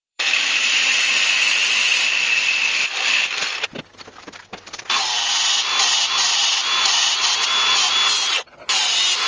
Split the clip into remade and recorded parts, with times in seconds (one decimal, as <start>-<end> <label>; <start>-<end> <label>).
0.0-3.5 remade; 3.5-9.3 recorded